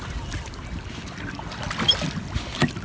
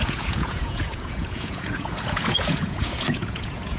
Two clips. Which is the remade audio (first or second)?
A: second